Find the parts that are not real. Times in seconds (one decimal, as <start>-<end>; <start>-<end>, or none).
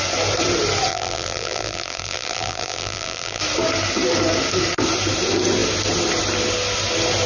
0.9-3.4